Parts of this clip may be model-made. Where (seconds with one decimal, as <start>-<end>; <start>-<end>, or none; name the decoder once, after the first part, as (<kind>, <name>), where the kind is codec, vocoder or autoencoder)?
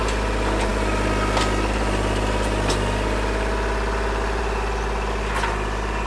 none